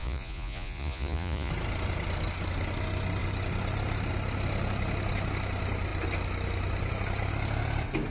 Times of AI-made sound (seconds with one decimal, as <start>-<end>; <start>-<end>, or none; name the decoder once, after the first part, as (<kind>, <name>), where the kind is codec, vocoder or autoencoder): 0.0-1.5 (vocoder, Vocos)